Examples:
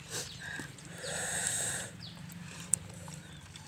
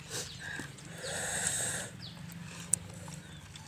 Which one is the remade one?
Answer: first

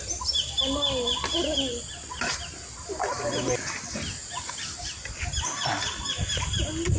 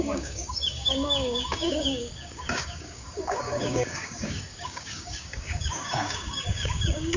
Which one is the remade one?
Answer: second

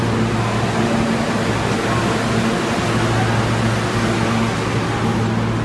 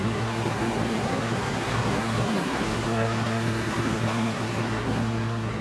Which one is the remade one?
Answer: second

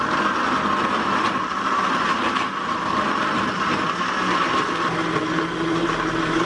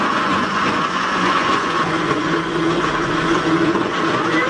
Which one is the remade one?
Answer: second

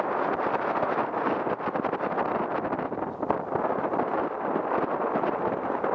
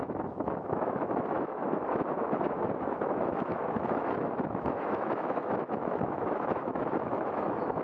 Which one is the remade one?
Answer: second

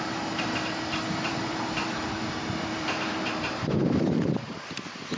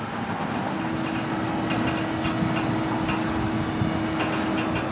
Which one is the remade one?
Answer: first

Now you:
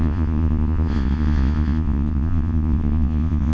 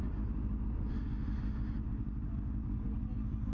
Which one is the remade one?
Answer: first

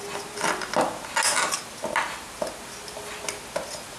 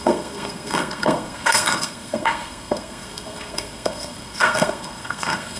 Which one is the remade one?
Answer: second